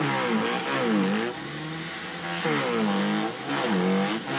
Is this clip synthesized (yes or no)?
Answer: no